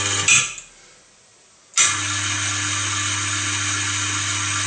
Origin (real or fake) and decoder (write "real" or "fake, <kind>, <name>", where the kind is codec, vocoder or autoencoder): real